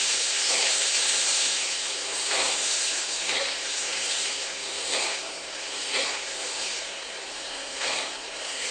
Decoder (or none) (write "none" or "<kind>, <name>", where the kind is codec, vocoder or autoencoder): codec, SNAC